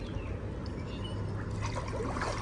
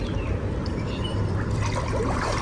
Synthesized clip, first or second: second